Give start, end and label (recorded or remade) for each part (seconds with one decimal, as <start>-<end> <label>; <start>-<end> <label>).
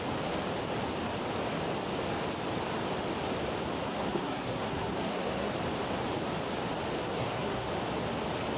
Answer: 0.0-3.8 recorded; 3.8-5.5 remade; 5.5-7.0 recorded; 7.0-7.7 remade; 7.7-8.6 recorded